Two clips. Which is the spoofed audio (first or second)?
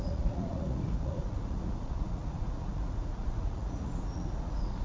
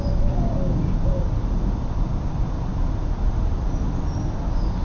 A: first